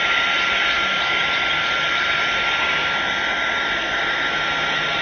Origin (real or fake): real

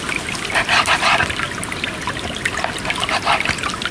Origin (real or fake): real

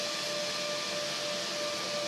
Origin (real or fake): real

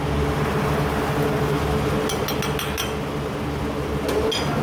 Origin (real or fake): real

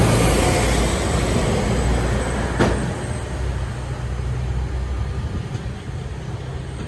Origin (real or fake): real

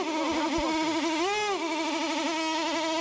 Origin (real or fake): real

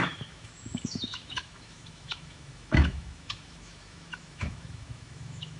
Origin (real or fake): fake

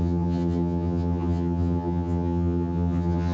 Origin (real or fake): fake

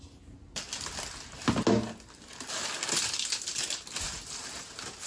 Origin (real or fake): real